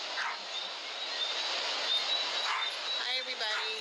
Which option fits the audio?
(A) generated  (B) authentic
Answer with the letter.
B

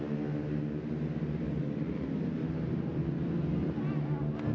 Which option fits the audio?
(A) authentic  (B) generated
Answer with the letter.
A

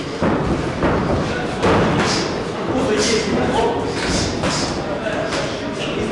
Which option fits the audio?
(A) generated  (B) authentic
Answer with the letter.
B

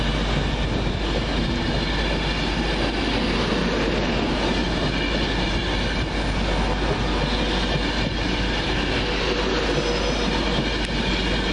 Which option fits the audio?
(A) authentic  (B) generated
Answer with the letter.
A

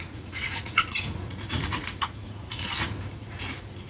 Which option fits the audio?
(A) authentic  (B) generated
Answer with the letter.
B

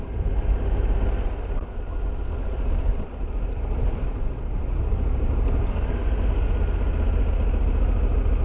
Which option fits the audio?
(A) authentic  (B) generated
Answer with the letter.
A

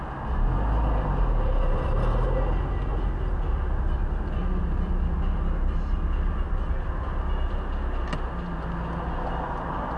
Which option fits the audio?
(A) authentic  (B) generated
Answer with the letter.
A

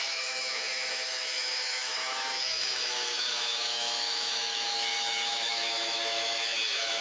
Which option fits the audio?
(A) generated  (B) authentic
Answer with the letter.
A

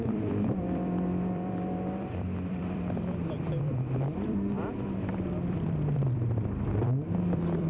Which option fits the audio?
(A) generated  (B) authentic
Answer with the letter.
A